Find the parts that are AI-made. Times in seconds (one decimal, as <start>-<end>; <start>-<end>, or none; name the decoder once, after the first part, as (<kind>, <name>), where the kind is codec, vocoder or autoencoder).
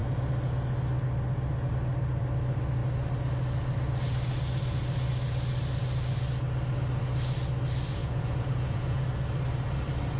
8.0-9.0 (vocoder, Vocos)